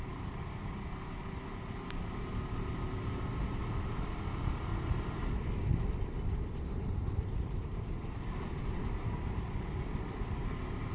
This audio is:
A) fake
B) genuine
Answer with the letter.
B